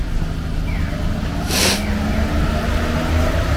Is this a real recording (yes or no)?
yes